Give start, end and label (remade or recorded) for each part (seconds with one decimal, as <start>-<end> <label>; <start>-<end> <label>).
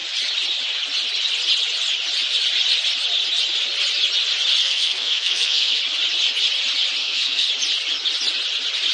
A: 0.0-4.6 recorded; 4.6-5.8 remade; 5.8-7.0 recorded; 7.0-7.5 remade; 7.5-8.9 recorded